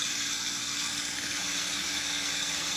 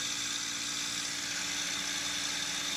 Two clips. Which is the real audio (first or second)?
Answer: second